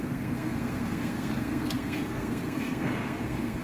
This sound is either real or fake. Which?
fake